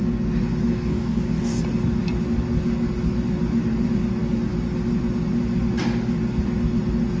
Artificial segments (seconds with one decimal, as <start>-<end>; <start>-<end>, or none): 0.7-1.6